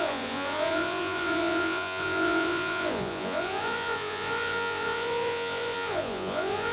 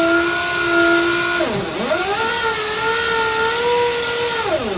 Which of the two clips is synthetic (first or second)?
first